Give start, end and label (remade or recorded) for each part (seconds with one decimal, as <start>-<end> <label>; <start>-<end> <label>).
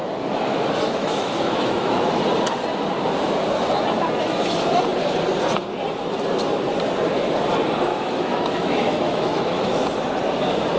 0.0-2.2 remade; 2.2-7.9 recorded; 7.9-9.9 remade; 9.9-10.8 recorded